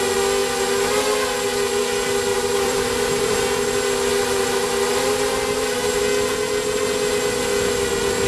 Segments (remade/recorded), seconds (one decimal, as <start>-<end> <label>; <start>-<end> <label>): 0.0-2.3 recorded; 2.3-3.4 remade; 3.4-4.1 recorded; 4.1-6.0 remade; 6.0-8.3 recorded